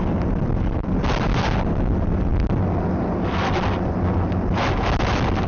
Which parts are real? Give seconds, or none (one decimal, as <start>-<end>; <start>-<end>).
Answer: 0.0-5.5